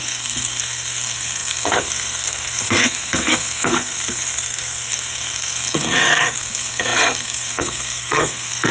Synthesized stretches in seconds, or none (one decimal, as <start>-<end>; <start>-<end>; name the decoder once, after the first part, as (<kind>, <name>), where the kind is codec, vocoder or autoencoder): 0.0-8.7 (codec, SNAC)